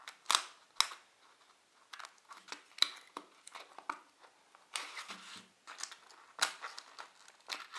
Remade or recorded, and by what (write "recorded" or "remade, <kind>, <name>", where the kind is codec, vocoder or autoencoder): recorded